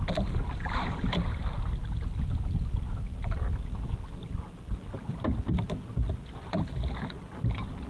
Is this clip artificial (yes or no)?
no